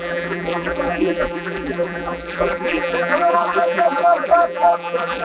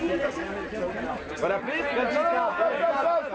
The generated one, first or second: first